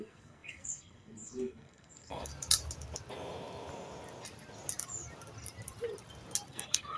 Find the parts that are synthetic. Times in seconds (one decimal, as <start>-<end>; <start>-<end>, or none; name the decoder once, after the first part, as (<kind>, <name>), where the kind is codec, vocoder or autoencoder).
0.0-2.3 (codec, SNAC); 6.5-7.0

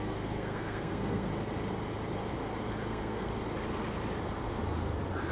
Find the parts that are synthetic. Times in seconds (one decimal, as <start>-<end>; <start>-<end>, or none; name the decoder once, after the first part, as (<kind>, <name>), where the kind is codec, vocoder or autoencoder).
0.0-1.3 (codec, SNAC); 2.9-3.3